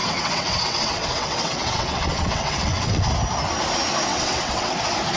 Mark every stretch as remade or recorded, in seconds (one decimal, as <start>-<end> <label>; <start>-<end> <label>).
0.0-3.1 remade; 3.1-4.1 recorded; 4.1-4.8 remade; 4.8-5.2 recorded